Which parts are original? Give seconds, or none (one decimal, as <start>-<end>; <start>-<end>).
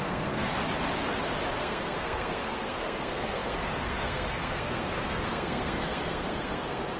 0.5-1.6